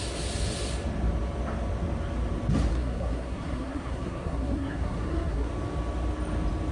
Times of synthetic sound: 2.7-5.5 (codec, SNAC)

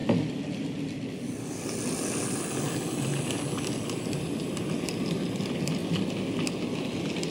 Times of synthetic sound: none

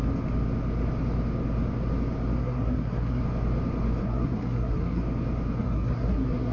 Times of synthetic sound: 2.4-3.2 (codec, SNAC); 4.0-5.0; 5.6-6.5

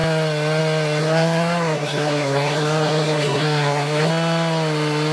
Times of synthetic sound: 1.0-4.1 (codec, SNAC)

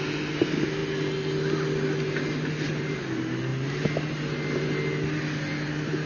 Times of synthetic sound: none

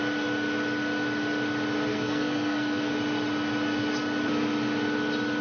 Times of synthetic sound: 1.9-2.9 (codec, SNAC)

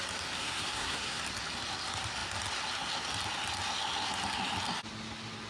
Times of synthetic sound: 0.4-1.2 (codec, SNAC)